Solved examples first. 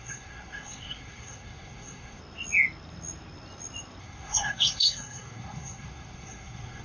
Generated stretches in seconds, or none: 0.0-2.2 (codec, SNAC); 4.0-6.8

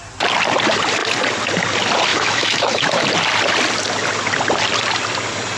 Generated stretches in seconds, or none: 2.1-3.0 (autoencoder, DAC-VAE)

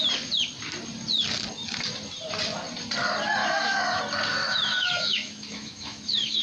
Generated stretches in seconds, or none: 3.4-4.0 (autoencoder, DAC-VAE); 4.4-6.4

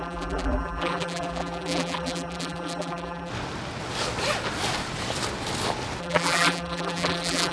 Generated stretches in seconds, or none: 0.0-3.3 (vocoder, BigVGAN v2); 6.0-7.5

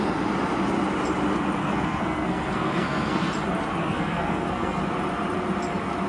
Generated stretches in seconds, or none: 1.6-3.3 (codec, SNAC); 3.8-4.8

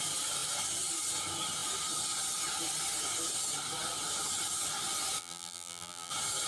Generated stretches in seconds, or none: 5.2-6.1 (vocoder, BigVGAN v2)

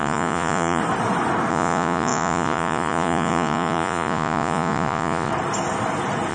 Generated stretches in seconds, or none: 0.0-0.8 (vocoder, Vocos); 1.5-5.3